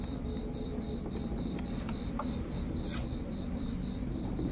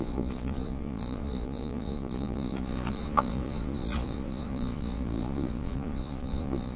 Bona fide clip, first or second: first